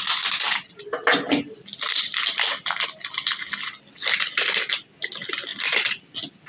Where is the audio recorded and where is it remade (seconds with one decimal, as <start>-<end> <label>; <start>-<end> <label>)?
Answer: 0.0-6.5 recorded